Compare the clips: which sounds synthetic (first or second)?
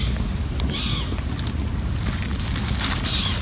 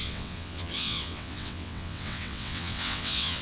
second